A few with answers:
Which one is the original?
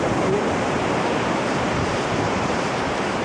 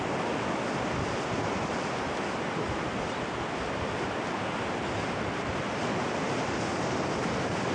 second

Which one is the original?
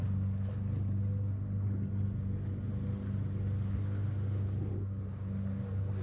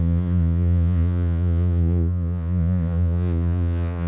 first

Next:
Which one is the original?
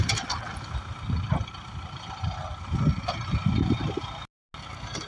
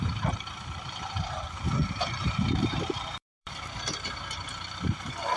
first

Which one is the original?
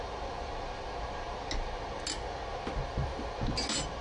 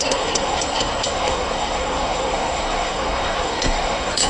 first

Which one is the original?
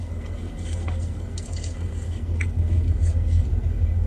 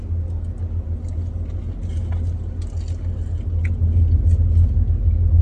second